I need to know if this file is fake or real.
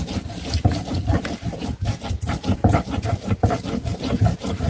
fake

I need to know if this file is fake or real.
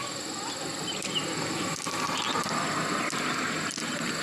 real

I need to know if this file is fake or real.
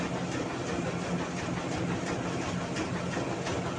real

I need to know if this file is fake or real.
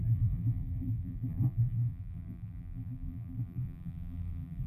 fake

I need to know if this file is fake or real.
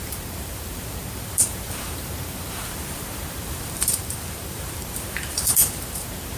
fake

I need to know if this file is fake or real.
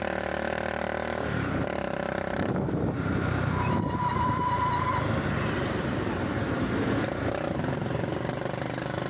fake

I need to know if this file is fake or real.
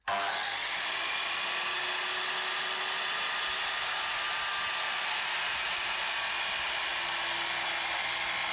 real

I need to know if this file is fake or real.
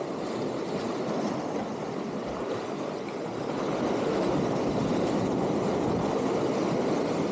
real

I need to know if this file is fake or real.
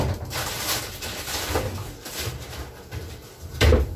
real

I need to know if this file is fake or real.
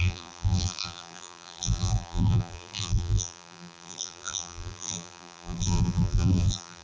fake